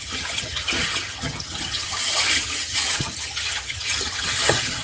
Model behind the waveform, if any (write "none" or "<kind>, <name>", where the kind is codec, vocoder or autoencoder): vocoder, HiFi-GAN